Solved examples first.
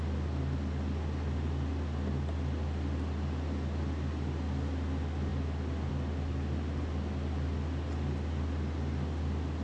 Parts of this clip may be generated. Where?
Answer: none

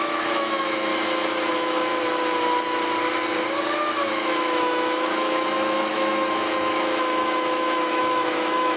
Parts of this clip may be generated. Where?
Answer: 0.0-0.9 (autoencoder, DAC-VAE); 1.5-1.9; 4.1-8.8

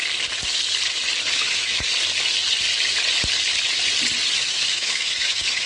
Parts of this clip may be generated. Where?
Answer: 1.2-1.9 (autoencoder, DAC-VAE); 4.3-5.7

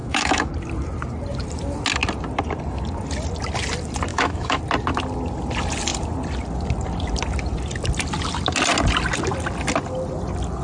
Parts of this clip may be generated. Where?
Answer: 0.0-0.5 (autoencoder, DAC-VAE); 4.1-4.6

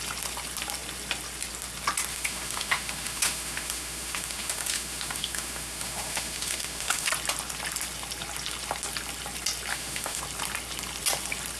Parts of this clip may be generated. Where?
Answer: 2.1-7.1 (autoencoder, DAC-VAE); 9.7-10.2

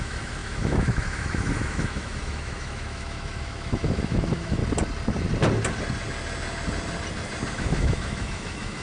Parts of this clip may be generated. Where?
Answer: 0.0-4.6 (autoencoder, DAC-VAE); 7.5-8.8